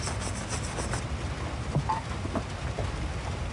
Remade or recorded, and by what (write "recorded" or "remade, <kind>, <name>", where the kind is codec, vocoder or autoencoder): recorded